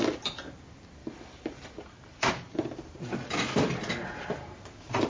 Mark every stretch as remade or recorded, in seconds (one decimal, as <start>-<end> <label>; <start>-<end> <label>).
0.0-1.0 recorded; 1.0-2.3 remade; 2.3-5.1 recorded